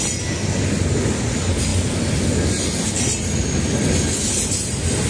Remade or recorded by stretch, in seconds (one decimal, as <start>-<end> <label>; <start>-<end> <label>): 0.0-5.1 recorded